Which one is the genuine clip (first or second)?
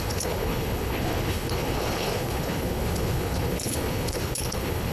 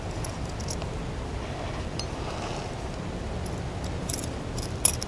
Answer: second